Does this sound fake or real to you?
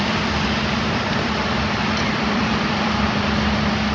fake